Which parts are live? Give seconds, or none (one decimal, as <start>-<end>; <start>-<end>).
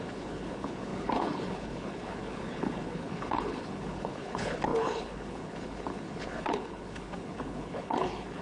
none